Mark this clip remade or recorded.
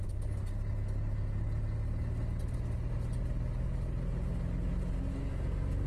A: recorded